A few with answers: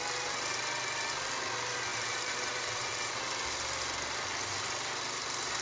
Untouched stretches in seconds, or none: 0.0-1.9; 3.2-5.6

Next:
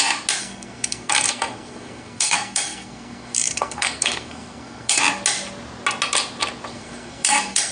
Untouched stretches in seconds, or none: 0.0-0.4; 5.0-6.7

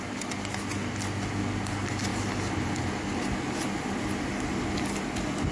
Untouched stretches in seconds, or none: 0.0-5.5

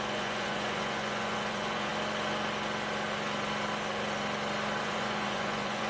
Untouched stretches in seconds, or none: 1.9-4.8